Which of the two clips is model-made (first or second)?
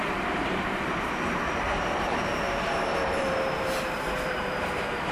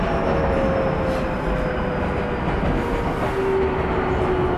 first